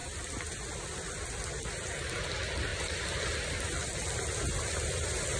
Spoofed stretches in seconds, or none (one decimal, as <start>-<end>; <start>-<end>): none